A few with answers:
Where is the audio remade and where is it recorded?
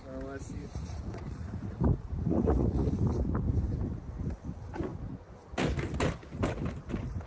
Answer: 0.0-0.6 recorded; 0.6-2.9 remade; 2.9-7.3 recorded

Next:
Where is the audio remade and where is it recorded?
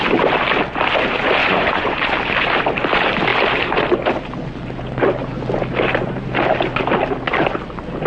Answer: 0.0-1.4 recorded; 1.4-1.9 remade; 1.9-8.1 recorded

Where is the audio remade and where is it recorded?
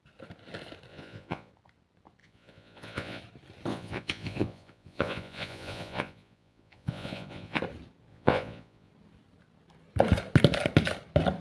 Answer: 0.0-0.9 recorded; 0.9-1.5 remade; 1.5-2.2 recorded; 2.2-3.2 remade; 3.2-3.7 recorded; 3.7-7.6 remade; 7.6-8.1 recorded; 8.1-8.9 remade; 8.9-11.4 recorded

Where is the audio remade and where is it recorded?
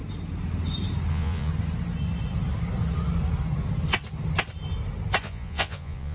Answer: 0.0-1.1 recorded; 1.1-1.5 remade; 1.5-5.2 recorded; 5.2-6.1 remade